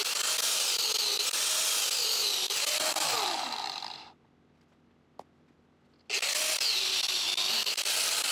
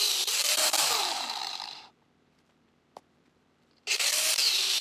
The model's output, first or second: second